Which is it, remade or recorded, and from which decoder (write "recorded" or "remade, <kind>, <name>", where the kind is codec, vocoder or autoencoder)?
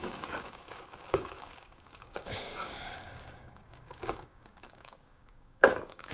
remade, codec, DAC